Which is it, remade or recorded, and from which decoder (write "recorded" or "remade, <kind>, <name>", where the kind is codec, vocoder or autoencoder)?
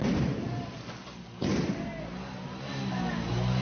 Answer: recorded